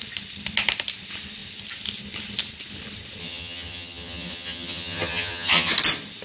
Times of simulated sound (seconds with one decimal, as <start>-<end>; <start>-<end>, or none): 3.2-5.7